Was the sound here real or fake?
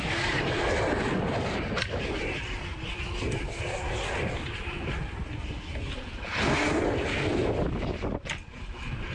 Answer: real